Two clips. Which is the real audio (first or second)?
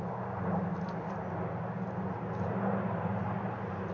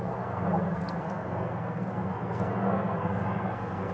first